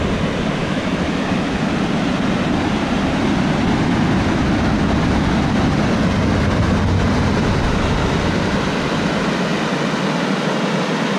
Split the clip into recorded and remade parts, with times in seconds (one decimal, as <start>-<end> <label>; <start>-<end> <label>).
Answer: 0.0-0.6 recorded; 0.6-1.6 remade; 1.6-11.2 recorded